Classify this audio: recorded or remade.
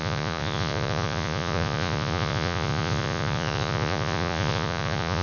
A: remade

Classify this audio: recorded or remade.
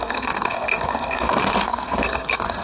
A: remade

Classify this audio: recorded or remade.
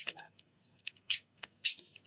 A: remade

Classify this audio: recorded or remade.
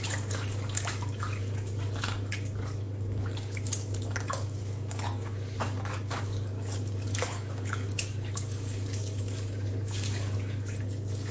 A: remade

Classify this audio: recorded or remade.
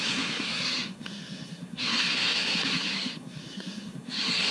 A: remade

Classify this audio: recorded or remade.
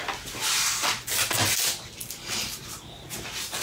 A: recorded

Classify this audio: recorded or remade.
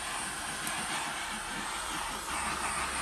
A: recorded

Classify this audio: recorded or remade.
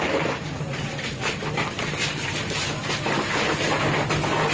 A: recorded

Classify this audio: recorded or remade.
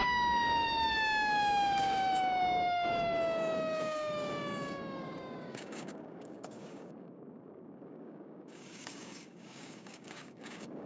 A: remade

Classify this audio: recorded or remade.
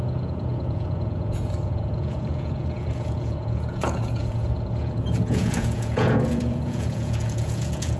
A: remade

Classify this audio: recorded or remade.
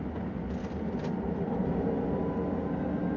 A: recorded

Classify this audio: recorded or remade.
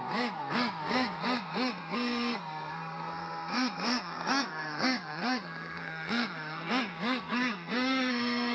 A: remade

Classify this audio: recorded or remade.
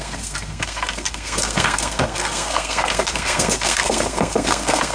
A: remade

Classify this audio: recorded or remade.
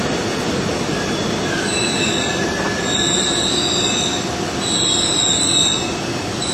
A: recorded